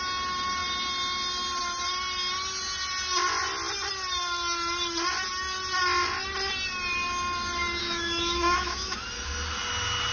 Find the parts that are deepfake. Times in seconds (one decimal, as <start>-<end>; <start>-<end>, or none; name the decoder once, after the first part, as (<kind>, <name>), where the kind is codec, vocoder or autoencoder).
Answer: 7.8-9.0 (autoencoder, DAC-VAE)